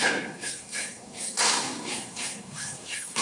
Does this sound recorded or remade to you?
remade